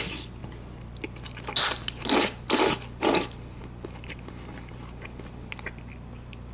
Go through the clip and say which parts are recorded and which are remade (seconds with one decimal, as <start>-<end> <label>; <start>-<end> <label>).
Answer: 0.0-6.5 recorded